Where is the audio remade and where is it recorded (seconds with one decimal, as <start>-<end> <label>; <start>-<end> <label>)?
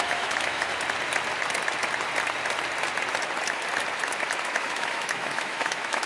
0.0-0.7 remade; 0.7-4.4 recorded; 4.4-6.1 remade